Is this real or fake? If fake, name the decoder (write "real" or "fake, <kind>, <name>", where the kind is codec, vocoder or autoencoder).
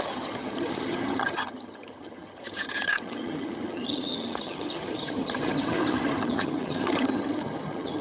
fake, vocoder, HiFi-GAN